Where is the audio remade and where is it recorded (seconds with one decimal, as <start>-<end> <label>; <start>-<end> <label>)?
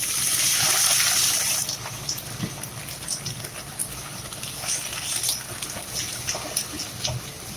0.0-7.6 recorded